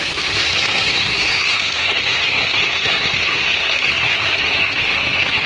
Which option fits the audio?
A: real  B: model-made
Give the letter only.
B